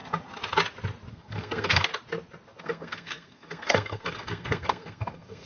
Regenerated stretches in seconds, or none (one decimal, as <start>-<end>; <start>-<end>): 1.1-1.9; 2.6-5.5

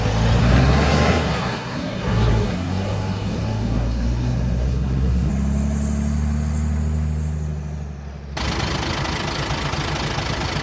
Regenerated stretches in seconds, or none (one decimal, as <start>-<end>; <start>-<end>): 0.4-5.3

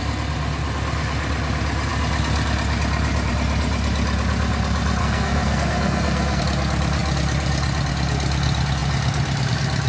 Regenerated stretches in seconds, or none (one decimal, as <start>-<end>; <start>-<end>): 5.0-6.4

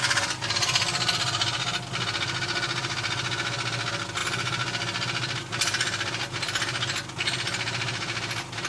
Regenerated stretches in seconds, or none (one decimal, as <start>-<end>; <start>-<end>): none